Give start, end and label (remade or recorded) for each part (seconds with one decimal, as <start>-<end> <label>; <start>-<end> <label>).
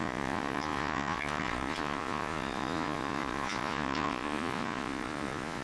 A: 0.0-5.6 remade